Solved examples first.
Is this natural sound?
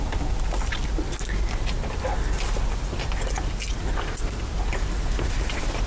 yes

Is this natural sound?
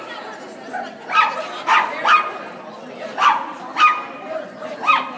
yes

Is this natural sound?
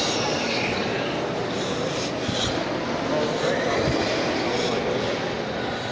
yes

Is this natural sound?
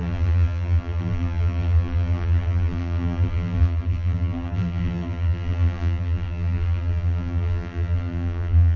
no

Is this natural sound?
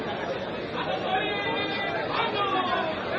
yes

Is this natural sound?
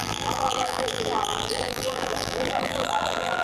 no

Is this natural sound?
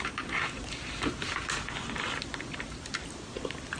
yes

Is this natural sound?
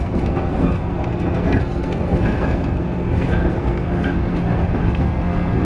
no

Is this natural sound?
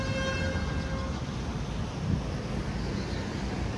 yes